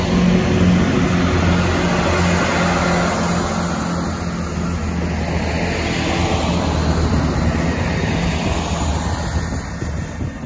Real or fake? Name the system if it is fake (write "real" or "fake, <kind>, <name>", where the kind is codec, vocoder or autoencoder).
real